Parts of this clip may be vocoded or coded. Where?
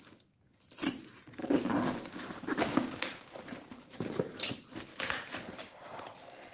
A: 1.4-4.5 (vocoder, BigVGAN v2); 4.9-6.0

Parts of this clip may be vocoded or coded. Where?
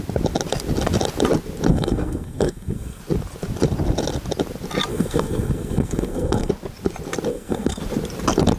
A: 1.7-3.0 (codec, SNAC); 4.9-6.5; 7.3-7.8